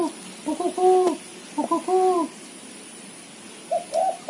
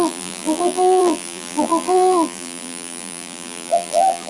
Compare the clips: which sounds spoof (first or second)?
second